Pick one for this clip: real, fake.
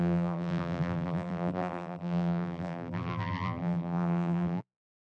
fake